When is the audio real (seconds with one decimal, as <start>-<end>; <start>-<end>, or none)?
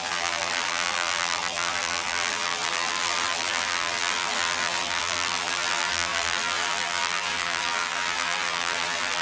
none